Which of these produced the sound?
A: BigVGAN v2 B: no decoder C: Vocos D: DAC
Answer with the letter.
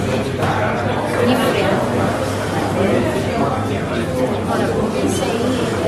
A